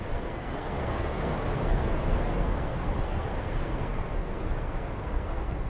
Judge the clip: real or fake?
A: fake